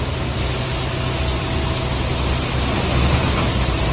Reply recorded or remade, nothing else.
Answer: recorded